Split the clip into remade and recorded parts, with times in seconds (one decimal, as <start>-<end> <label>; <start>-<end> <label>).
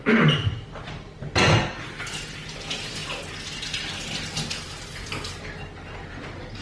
0.0-6.6 recorded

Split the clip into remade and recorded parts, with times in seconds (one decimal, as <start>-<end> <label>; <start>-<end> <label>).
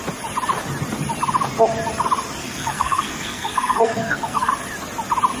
0.0-2.4 recorded; 2.4-4.5 remade; 4.5-5.4 recorded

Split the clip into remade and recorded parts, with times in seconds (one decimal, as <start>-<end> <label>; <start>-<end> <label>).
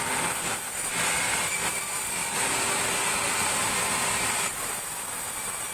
0.0-5.7 recorded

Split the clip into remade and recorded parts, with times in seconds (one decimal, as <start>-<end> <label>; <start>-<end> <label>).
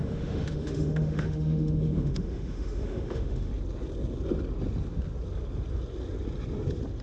0.0-3.5 remade; 3.5-7.0 recorded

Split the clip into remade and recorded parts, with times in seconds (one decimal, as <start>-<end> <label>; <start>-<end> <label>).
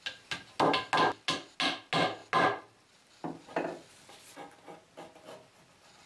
0.0-6.1 recorded